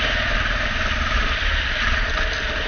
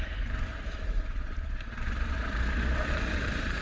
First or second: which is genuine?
first